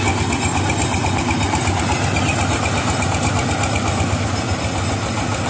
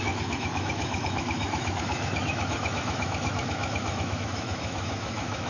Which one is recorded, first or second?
first